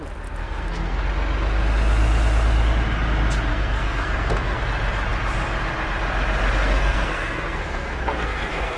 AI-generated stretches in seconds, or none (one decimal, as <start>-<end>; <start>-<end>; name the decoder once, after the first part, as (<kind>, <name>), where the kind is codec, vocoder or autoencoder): 0.4-1.0 (codec, SNAC); 3.5-4.6; 6.6-8.8